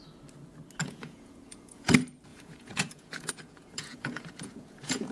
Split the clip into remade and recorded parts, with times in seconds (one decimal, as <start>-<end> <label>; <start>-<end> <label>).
0.0-0.8 recorded; 0.8-1.9 remade; 1.9-2.3 recorded; 2.3-5.1 remade